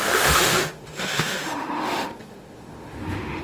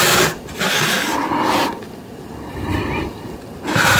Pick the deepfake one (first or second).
first